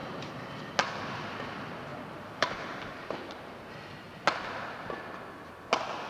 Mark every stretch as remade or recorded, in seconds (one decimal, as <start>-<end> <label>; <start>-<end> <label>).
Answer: 0.0-0.6 remade; 0.6-1.9 recorded; 1.9-3.2 remade; 3.2-6.1 recorded

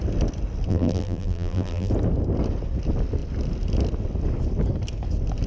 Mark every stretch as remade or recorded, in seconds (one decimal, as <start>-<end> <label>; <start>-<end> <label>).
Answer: 0.0-0.7 recorded; 0.7-1.9 remade; 1.9-5.5 recorded

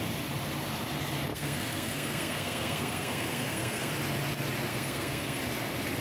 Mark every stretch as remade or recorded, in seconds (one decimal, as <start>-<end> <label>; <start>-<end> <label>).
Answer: 0.0-1.3 recorded; 1.3-3.9 remade; 3.9-4.7 recorded; 4.7-5.4 remade; 5.4-6.0 recorded

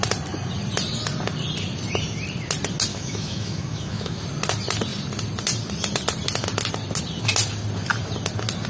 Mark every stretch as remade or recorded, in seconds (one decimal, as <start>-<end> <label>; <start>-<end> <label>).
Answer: 0.0-2.9 recorded; 2.9-4.2 remade; 4.2-8.7 recorded

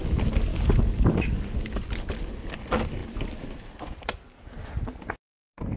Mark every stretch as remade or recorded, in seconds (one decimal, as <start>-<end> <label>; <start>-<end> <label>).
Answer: 0.0-0.5 recorded; 0.5-1.8 remade; 1.8-5.8 recorded

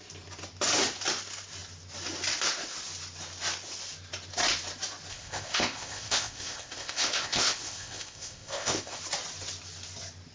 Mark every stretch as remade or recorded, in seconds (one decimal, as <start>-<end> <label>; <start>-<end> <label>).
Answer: 0.0-5.1 recorded; 5.1-9.0 remade; 9.0-10.3 recorded

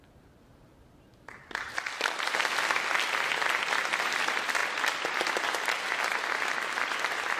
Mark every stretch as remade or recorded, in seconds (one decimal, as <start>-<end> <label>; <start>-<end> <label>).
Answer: 0.0-7.4 recorded

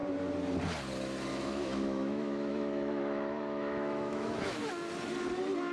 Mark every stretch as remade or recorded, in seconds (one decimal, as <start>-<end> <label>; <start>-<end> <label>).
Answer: 0.0-1.3 recorded; 1.3-4.7 remade; 4.7-5.7 recorded